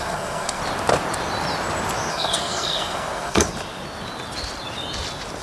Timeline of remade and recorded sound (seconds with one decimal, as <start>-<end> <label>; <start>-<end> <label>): 0.0-0.6 remade; 0.6-2.1 recorded; 2.1-3.5 remade; 3.5-5.4 recorded